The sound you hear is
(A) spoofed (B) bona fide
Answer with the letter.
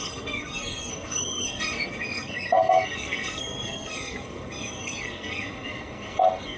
A